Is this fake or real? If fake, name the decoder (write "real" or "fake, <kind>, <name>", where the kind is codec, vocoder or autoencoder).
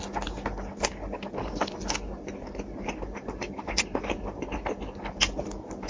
real